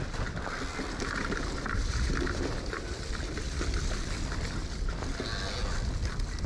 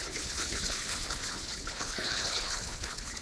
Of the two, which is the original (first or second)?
first